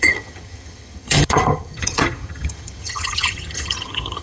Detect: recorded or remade remade